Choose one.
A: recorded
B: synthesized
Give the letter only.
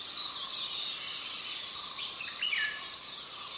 A